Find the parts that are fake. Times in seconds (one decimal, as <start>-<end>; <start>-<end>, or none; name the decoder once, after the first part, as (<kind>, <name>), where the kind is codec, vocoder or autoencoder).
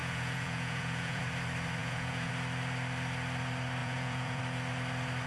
0.0-1.2 (vocoder, Vocos); 1.8-2.3; 3.8-4.4